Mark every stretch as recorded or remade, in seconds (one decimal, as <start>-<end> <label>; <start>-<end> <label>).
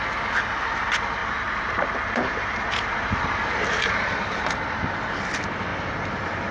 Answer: 0.0-1.2 recorded; 1.2-4.1 remade; 4.1-5.7 recorded; 5.7-6.5 remade